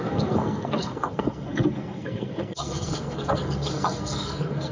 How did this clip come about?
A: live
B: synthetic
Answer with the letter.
B